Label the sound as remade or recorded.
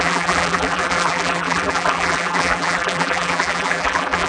remade